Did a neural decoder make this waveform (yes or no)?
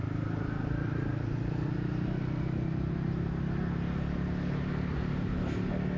no